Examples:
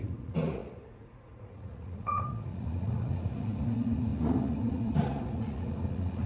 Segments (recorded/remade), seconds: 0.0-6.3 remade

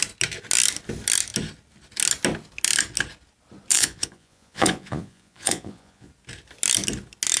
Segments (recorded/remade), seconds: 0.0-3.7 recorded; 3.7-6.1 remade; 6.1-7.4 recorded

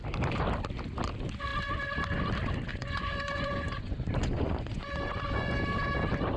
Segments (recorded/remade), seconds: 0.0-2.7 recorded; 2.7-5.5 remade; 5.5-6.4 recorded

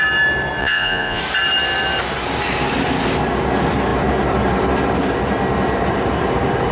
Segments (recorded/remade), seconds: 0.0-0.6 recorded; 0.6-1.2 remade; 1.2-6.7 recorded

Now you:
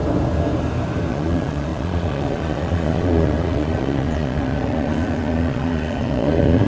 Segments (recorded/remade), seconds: 0.0-1.1 recorded; 1.1-6.7 remade